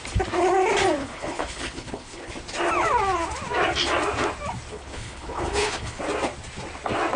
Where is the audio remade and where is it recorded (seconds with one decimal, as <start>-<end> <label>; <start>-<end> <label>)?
0.0-1.0 recorded; 1.0-2.3 remade; 2.3-4.7 recorded; 4.7-6.0 remade; 6.0-7.2 recorded